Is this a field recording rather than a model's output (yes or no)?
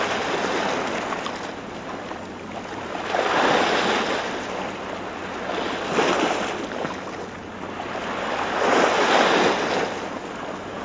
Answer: yes